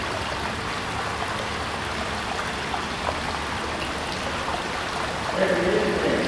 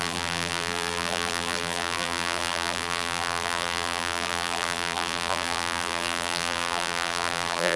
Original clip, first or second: first